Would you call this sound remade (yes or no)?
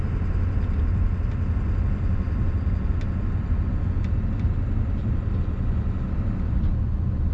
no